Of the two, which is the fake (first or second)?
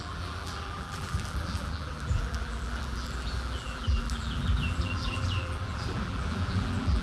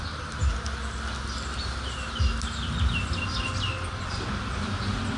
first